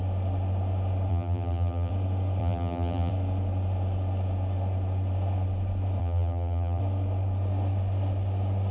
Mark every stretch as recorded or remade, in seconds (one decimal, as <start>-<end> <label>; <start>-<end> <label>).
0.0-1.1 recorded; 1.1-1.9 remade; 1.9-2.4 recorded; 2.4-3.1 remade; 3.1-6.0 recorded; 6.0-6.8 remade; 6.8-8.7 recorded